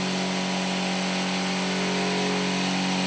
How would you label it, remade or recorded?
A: recorded